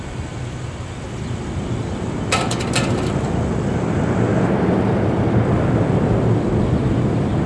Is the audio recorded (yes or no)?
yes